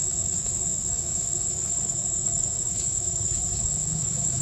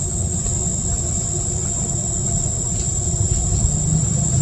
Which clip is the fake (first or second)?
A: first